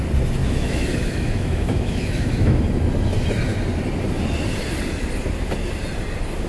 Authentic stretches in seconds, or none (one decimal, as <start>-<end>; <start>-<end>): 0.0-0.4; 2.6-6.5